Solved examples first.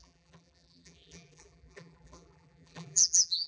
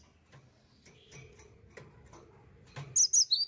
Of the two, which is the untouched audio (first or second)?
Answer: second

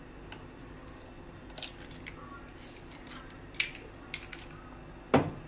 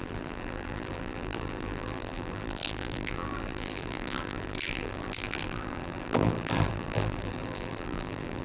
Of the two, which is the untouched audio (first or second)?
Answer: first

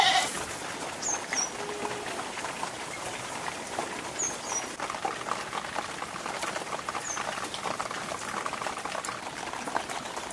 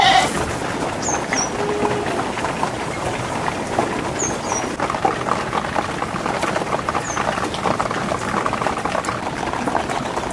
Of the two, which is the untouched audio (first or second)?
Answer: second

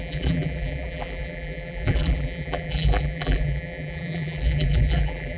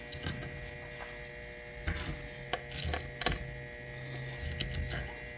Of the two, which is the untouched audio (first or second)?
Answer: second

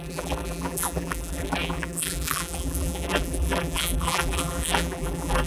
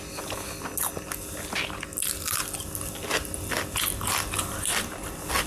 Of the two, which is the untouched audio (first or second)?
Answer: second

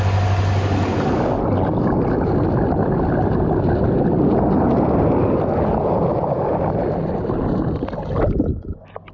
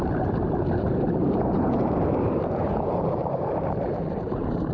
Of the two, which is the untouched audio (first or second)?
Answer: first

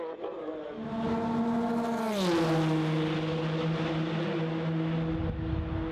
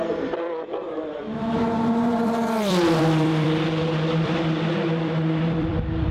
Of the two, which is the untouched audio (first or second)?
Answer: first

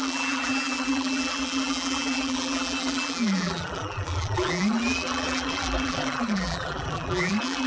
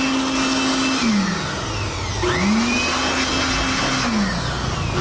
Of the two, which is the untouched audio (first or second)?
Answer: second